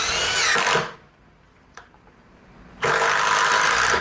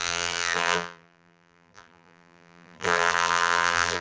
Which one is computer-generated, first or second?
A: second